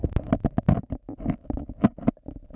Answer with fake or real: real